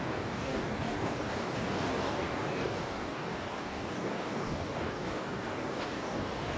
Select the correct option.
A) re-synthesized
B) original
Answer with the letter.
A